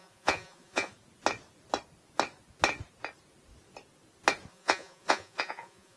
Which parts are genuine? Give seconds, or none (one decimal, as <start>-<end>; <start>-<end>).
0.9-4.5